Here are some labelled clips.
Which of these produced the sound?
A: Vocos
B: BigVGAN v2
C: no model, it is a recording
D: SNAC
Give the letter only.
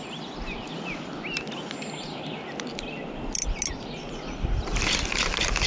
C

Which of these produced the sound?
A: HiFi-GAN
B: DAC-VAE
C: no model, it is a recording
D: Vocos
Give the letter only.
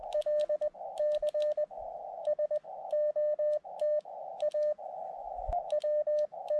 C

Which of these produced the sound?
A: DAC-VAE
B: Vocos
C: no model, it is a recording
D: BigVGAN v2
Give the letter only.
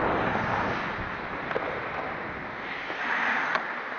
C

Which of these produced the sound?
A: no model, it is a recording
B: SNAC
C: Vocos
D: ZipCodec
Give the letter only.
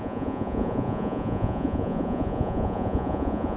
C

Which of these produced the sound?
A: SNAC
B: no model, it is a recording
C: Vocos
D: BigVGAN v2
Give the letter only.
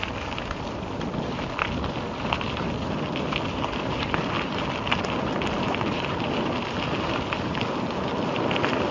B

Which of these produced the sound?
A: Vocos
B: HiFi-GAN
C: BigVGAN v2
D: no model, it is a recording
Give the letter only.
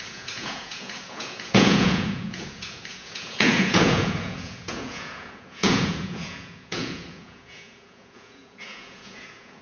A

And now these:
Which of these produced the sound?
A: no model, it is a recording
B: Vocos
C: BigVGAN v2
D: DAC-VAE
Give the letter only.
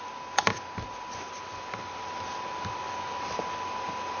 A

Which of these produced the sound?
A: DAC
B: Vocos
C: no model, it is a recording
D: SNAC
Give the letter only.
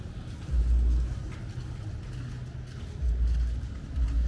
C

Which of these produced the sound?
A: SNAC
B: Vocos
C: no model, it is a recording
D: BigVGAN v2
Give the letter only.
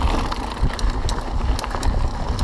C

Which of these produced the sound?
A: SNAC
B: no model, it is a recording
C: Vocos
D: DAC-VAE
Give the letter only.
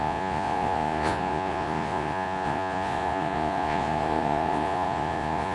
C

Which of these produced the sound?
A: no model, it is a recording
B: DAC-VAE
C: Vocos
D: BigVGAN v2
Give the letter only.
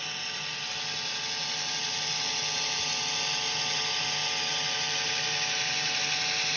A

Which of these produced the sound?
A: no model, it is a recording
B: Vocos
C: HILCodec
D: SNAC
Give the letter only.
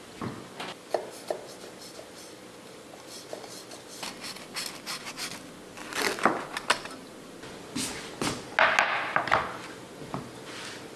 A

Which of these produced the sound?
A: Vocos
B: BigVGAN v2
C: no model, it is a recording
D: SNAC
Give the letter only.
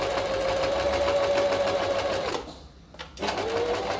C